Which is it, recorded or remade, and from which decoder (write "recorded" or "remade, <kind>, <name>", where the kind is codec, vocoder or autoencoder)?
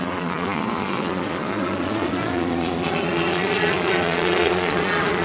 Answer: remade, vocoder, Vocos